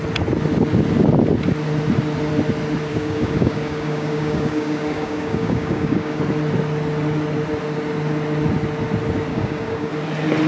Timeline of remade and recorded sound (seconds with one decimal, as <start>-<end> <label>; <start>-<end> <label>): 0.0-2.9 recorded; 2.9-6.2 remade; 6.2-9.3 recorded; 9.3-9.9 remade; 9.9-10.5 recorded